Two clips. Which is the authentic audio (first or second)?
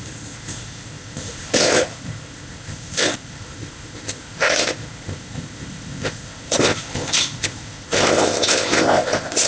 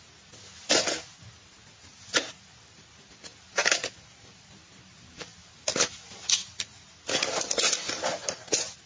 second